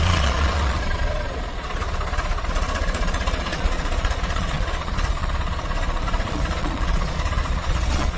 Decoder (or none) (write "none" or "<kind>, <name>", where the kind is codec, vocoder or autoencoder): vocoder, Vocos